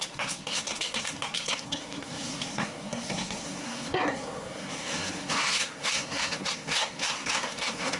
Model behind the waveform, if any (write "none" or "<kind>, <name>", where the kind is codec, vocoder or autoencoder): codec, SNAC